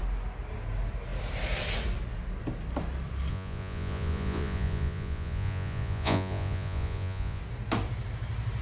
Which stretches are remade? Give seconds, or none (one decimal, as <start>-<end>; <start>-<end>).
3.3-7.4